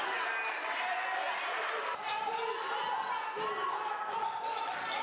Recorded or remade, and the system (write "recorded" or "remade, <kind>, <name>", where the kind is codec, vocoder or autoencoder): recorded